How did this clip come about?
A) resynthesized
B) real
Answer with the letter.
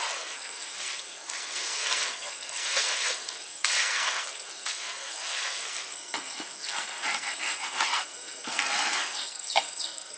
A